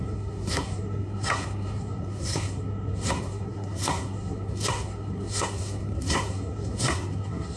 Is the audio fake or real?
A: fake